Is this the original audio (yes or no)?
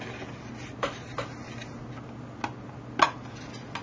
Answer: yes